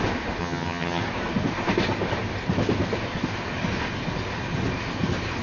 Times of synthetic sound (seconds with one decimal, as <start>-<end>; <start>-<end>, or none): 0.4-1.0

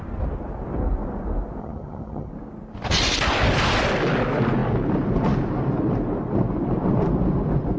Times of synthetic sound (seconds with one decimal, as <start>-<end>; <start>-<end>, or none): 1.6-2.3

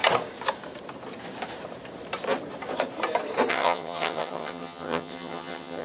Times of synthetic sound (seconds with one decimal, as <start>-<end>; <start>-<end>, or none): 3.5-5.8